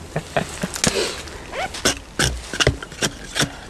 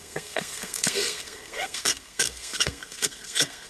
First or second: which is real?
first